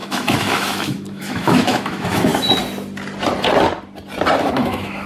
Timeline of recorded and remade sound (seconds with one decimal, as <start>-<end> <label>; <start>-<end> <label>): 0.0-2.3 remade; 2.3-4.4 recorded; 4.4-5.1 remade